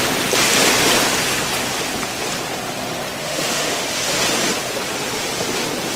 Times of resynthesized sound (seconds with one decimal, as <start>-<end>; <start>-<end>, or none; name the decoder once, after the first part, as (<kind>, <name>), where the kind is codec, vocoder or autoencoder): 3.2-3.8 (autoencoder, DAC-VAE)